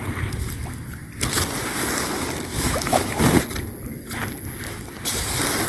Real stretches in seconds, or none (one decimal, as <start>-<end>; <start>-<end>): 0.0-2.5; 3.2-5.7